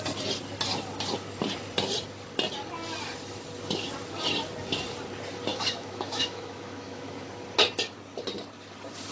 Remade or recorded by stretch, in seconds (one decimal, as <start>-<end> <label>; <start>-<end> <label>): 0.0-5.5 recorded; 5.5-7.3 remade; 7.3-9.1 recorded